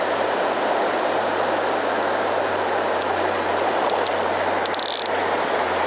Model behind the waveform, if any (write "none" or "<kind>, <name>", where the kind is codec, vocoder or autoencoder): none